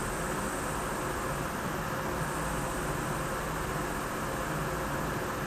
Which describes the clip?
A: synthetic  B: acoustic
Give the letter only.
B